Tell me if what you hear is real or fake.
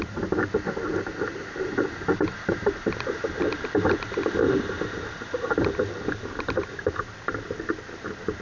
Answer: fake